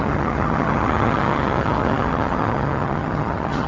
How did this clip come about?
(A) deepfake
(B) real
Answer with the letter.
A